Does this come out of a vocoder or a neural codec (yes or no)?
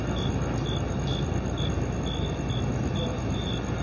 no